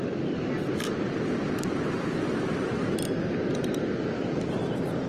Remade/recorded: remade